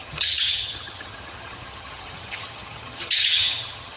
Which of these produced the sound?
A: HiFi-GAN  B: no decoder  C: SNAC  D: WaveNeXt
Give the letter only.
A